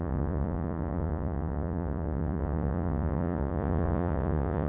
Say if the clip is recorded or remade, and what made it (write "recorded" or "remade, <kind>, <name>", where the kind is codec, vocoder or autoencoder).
remade, vocoder, Vocos